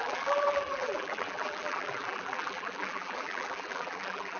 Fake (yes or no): yes